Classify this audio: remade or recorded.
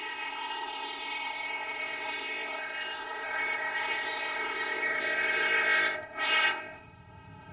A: remade